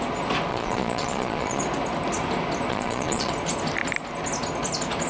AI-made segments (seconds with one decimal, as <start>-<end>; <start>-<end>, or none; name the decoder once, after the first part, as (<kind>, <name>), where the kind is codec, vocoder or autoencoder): 0.5-1.6 (vocoder, Vocos); 2.7-3.3